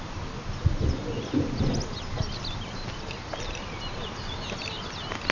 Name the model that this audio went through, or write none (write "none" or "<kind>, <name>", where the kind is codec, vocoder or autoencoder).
none